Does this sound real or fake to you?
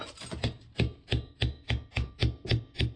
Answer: real